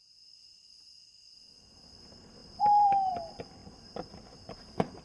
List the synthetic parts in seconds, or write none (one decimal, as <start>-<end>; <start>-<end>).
3.6-5.0